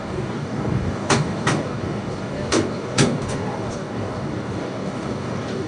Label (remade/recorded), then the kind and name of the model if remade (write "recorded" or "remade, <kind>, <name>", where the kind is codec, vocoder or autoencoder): remade, codec, DAC